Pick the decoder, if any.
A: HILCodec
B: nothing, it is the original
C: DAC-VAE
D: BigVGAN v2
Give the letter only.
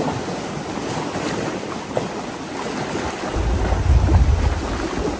B